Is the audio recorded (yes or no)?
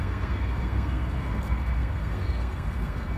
no